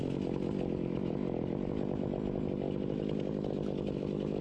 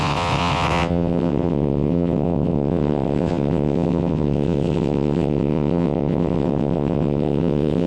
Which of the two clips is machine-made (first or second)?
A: second